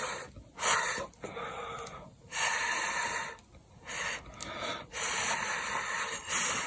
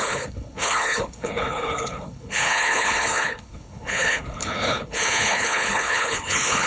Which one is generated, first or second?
second